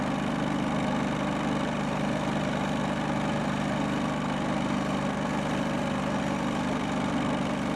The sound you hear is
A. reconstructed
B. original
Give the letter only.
B